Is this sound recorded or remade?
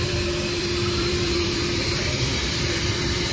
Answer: remade